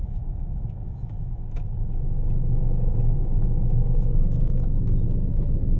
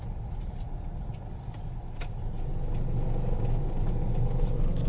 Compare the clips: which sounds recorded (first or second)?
second